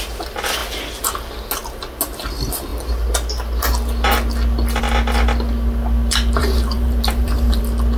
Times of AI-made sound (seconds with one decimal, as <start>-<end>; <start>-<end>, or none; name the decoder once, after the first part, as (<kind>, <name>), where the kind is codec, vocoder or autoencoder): 6.4-7.6 (vocoder, BigVGAN v2)